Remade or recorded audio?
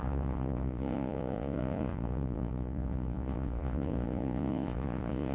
remade